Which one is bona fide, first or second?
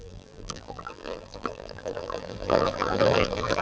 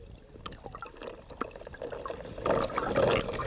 second